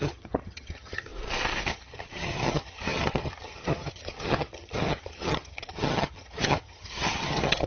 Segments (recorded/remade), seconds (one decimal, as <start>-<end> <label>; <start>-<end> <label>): 0.0-1.1 remade; 1.1-1.7 recorded; 1.7-7.7 remade